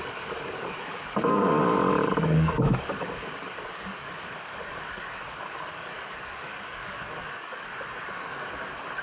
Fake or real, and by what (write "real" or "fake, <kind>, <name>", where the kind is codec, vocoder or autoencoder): fake, codec, DAC